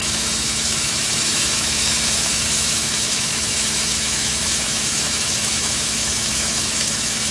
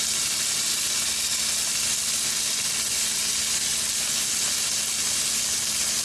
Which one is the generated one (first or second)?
first